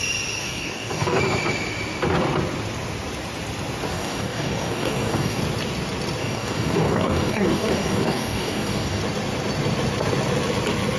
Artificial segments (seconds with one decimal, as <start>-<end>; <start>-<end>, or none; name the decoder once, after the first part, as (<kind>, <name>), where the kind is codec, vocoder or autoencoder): 0.4-1.2 (codec, DAC); 3.9-5.4; 6.2-9.0